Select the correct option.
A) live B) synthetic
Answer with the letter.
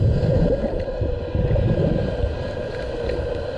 A